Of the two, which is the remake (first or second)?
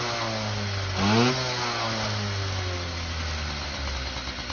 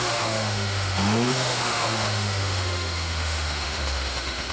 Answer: second